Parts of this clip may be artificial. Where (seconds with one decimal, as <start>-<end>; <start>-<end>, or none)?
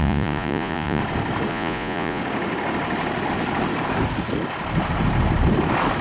0.0-1.0; 1.5-2.2